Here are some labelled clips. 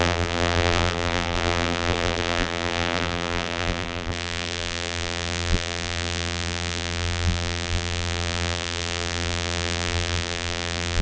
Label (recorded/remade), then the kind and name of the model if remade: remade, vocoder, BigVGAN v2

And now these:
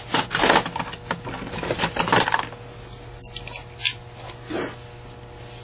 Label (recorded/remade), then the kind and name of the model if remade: recorded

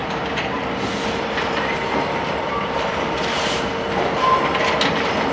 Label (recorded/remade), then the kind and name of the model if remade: recorded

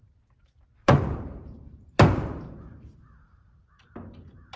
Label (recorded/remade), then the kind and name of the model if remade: remade, vocoder, BigVGAN v2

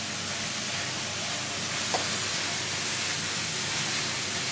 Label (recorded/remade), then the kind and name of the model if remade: recorded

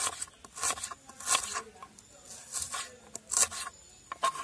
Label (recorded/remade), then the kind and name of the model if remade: recorded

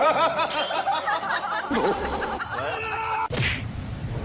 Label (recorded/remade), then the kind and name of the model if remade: remade, vocoder, BigVGAN v2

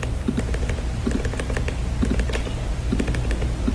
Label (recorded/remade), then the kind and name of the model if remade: remade, vocoder, BigVGAN v2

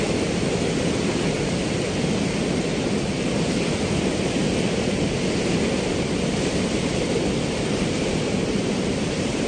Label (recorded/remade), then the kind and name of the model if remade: recorded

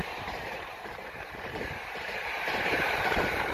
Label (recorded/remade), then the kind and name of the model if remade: remade, vocoder, BigVGAN v2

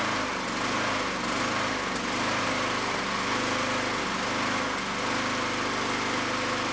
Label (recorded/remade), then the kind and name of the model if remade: recorded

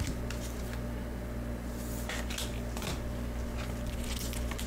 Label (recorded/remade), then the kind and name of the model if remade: recorded